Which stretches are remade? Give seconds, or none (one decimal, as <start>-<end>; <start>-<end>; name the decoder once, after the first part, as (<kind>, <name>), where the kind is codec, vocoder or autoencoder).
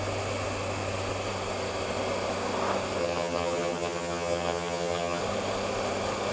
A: 3.0-5.2 (vocoder, HiFi-GAN)